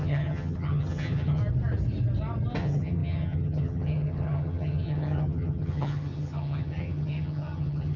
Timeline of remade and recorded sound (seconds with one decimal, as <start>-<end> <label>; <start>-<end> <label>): 0.0-1.4 remade; 1.4-2.6 recorded; 2.6-8.0 remade